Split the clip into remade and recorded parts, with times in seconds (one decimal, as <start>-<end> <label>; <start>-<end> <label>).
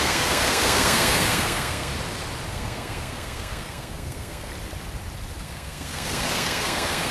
0.0-1.9 remade; 1.9-2.5 recorded; 2.5-4.5 remade; 4.5-5.4 recorded; 5.4-7.1 remade